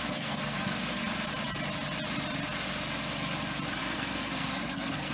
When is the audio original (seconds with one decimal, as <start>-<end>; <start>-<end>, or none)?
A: 1.0-3.8